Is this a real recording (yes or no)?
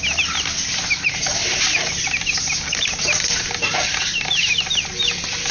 yes